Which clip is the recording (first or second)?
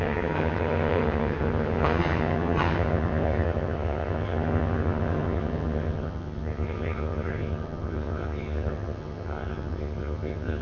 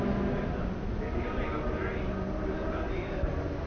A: second